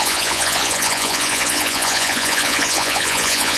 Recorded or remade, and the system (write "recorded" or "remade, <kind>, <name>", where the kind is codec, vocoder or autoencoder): remade, vocoder, Vocos